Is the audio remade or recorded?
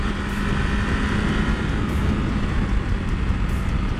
recorded